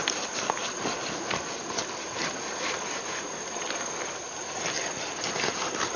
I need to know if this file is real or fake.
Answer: real